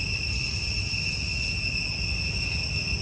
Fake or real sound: real